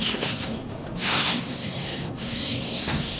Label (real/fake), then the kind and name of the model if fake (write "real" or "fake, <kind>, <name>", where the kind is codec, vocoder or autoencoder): fake, codec, SNAC